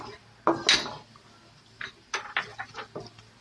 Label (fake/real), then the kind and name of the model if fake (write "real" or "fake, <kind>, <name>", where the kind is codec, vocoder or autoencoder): real